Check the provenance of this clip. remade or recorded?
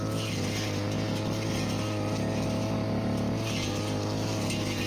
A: recorded